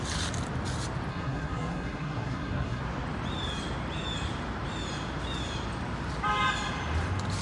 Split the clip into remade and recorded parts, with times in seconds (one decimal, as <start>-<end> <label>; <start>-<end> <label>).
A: 0.0-1.1 recorded; 1.1-2.8 remade; 2.8-7.4 recorded